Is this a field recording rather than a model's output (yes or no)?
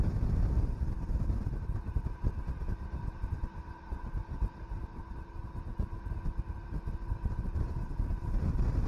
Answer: yes